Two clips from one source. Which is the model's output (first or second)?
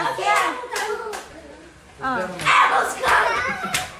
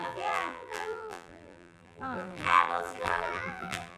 second